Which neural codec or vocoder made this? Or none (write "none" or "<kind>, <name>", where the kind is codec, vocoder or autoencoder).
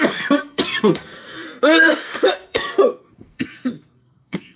codec, SNAC